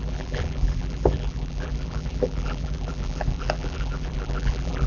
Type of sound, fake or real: fake